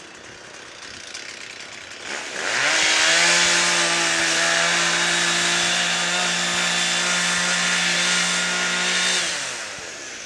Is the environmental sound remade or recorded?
recorded